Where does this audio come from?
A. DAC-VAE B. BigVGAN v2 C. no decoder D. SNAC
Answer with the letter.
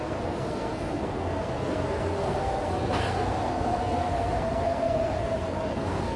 D